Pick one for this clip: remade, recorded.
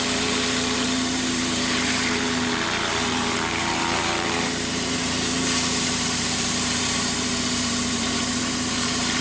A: remade